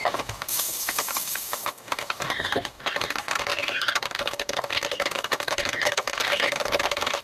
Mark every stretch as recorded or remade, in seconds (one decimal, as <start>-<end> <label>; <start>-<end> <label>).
0.0-7.2 remade